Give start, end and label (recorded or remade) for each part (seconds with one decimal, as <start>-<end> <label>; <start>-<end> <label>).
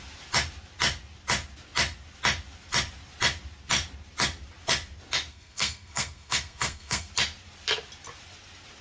0.0-5.3 recorded; 5.3-7.1 remade; 7.1-8.8 recorded